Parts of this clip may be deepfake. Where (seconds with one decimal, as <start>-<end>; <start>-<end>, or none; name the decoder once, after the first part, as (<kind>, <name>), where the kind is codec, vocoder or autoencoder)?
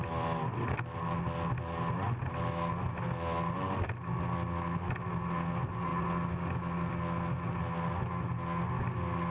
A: none